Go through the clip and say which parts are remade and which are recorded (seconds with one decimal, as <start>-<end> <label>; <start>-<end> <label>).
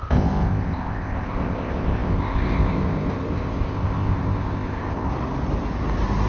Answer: 0.0-5.1 remade; 5.1-6.3 recorded